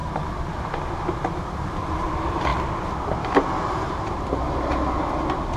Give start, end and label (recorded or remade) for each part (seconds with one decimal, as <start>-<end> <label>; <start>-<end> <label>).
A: 0.0-0.5 recorded; 0.5-2.5 remade; 2.5-4.2 recorded; 4.2-5.6 remade